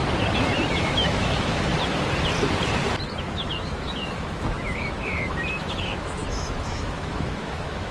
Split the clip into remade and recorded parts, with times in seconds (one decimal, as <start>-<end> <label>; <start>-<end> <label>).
0.0-0.7 recorded; 0.7-1.7 remade; 1.7-3.2 recorded; 3.2-7.9 remade